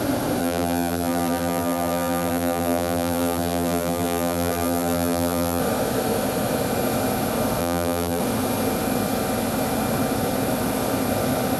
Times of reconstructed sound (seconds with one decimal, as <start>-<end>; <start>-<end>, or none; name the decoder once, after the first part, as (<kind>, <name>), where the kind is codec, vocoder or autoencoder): 0.4-5.6 (vocoder, BigVGAN v2); 7.6-8.2